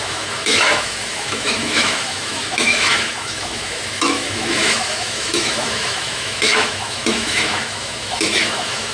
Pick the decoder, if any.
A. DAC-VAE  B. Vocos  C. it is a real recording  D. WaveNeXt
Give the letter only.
A